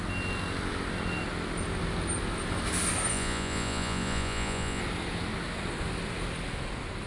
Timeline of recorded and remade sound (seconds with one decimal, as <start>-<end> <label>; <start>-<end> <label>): 0.0-3.1 recorded; 3.1-4.8 remade; 4.8-7.1 recorded